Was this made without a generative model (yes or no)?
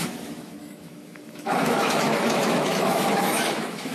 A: no